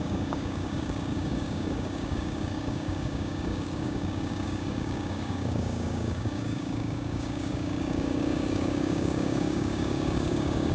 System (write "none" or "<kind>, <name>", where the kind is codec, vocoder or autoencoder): codec, DAC